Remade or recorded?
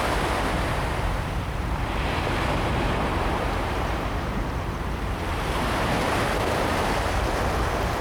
remade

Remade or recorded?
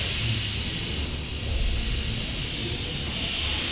recorded